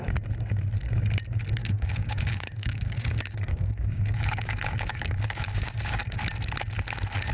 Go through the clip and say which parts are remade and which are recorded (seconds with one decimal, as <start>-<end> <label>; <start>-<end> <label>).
0.0-1.6 recorded; 1.6-6.0 remade; 6.0-7.3 recorded